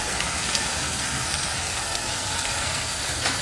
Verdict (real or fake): fake